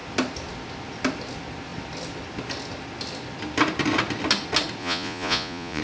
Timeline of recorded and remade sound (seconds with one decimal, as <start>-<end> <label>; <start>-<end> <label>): 0.0-4.8 recorded; 4.8-5.8 remade